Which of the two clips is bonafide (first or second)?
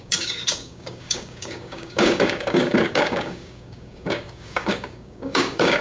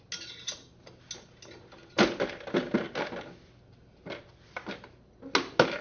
second